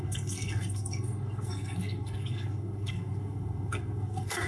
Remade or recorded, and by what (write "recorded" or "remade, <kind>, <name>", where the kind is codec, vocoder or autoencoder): remade, codec, SNAC